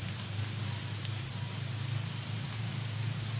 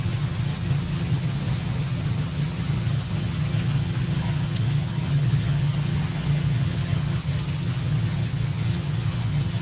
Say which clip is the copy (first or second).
second